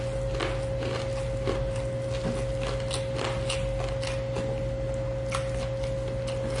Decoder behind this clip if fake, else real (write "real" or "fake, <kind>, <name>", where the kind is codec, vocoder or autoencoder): real